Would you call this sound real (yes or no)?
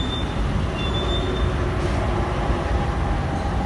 yes